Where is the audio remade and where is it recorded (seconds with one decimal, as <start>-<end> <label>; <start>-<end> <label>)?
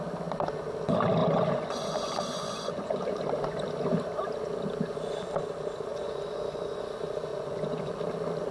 0.0-1.2 recorded; 1.2-3.0 remade; 3.0-5.9 recorded; 5.9-6.8 remade; 6.8-7.3 recorded; 7.3-7.9 remade; 7.9-8.5 recorded